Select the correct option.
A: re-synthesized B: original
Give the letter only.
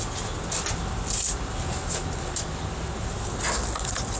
B